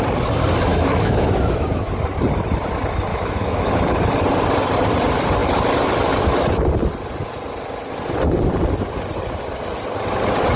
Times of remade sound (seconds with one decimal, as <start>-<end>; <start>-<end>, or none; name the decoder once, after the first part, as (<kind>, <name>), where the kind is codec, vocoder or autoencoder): 0.7-1.9 (autoencoder, DAC-VAE); 3.1-3.7